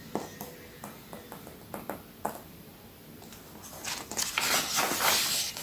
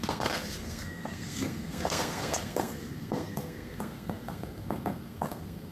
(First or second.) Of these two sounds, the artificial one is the second